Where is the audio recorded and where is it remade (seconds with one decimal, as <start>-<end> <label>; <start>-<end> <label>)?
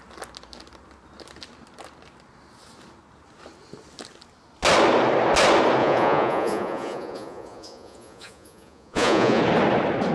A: 0.0-5.8 recorded; 5.8-9.4 remade; 9.4-10.1 recorded